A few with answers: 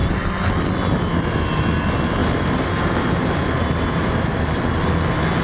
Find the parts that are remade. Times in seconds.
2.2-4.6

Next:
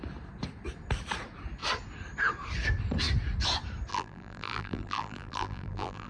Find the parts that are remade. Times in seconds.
3.9-6.1

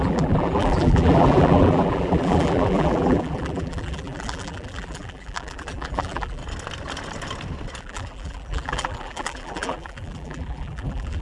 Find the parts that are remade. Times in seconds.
0.0-6.4; 7.8-11.2